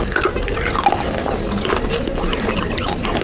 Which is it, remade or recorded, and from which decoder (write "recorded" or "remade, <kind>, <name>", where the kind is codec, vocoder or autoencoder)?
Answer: recorded